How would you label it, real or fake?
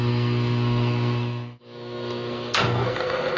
fake